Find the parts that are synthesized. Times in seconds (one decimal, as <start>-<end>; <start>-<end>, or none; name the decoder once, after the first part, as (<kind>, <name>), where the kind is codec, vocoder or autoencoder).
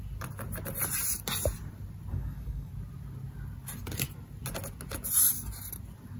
2.1-2.7 (codec, DAC)